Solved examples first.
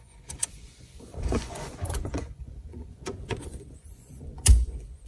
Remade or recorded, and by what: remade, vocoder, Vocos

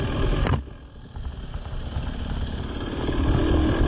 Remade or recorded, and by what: recorded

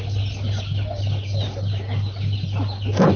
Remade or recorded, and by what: recorded